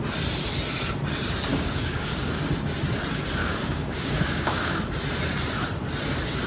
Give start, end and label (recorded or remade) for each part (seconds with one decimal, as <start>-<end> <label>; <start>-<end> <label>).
0.0-1.5 recorded; 1.5-2.4 remade; 2.4-3.4 recorded; 3.4-4.8 remade; 4.8-6.5 recorded